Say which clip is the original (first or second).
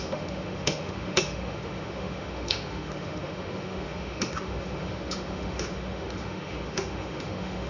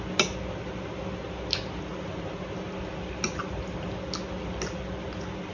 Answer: second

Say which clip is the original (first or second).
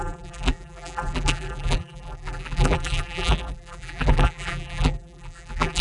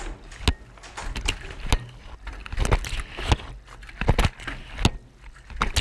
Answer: second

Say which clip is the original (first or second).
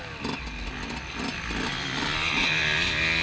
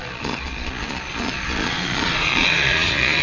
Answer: first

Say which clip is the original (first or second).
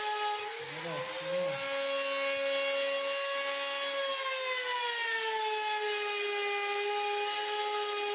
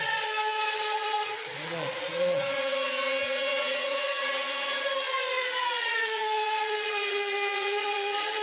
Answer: first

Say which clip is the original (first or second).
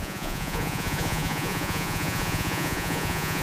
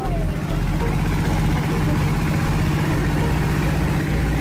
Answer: second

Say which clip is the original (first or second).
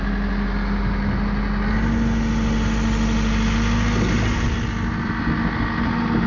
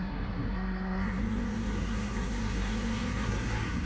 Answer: first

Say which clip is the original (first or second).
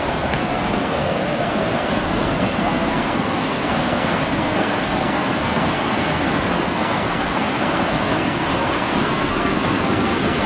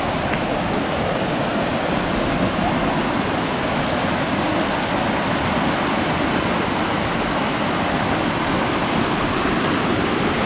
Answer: second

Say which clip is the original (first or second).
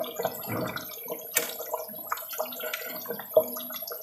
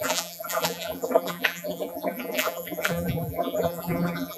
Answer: first